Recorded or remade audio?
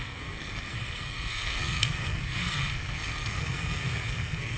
remade